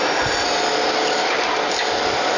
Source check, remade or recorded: recorded